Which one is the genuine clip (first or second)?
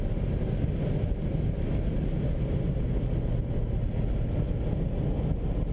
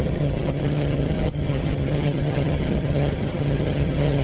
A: first